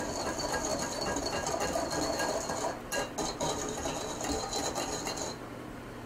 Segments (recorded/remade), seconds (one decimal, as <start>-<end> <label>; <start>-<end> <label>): 0.0-6.1 recorded